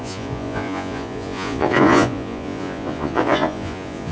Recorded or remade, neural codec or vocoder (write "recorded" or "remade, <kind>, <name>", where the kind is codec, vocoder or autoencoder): remade, vocoder, Vocos